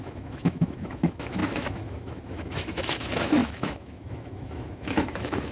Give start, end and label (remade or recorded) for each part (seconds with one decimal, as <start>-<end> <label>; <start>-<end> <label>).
0.0-5.5 remade